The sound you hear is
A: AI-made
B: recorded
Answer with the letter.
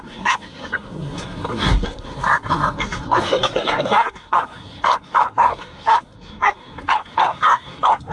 A